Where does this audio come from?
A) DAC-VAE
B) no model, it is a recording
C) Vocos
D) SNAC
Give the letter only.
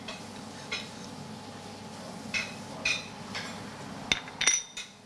B